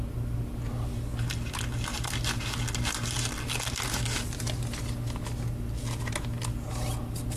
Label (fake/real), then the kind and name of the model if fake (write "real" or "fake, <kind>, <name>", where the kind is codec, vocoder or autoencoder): real